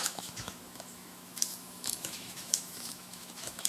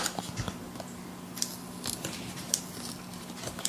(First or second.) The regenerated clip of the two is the first